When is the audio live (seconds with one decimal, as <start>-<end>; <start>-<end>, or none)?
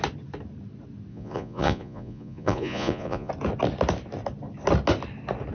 0.0-1.1; 3.3-5.5